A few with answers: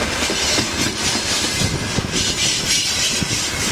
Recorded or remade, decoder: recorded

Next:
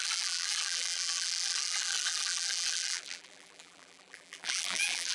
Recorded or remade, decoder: remade, vocoder, BigVGAN v2